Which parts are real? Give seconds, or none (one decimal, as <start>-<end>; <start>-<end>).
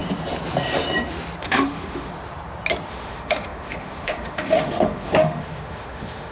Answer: 0.0-1.4; 2.1-2.9